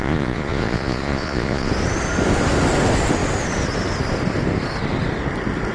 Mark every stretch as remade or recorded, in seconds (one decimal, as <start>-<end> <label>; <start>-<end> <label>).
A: 0.0-1.7 remade; 1.7-5.7 recorded